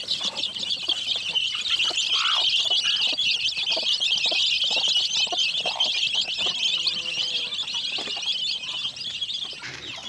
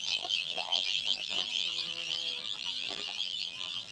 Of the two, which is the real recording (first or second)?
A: first